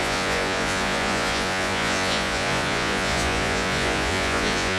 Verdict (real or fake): fake